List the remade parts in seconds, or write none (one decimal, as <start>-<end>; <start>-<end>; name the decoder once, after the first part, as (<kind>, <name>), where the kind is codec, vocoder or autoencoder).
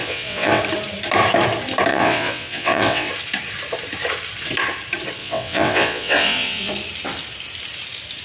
0.0-0.6 (vocoder, WaveNeXt); 1.9-3.1; 5.2-6.7